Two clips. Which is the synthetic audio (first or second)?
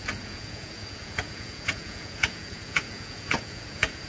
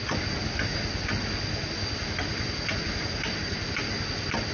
first